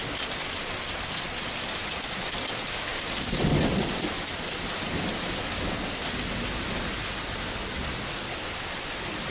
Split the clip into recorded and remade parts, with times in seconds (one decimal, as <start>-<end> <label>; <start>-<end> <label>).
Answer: 0.0-2.9 recorded; 2.9-4.8 remade; 4.8-9.3 recorded